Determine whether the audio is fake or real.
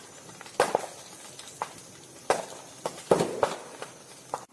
real